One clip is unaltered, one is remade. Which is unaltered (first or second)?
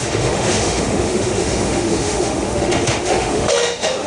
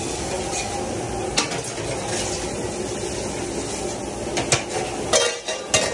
second